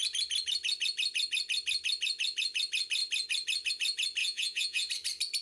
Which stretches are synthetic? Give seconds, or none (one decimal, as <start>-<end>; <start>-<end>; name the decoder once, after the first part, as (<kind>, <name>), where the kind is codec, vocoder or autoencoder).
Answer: 4.2-4.9 (vocoder, Vocos)